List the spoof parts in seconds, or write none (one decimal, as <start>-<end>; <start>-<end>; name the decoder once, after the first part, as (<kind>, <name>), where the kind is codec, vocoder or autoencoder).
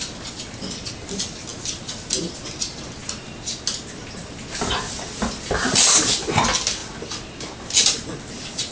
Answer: none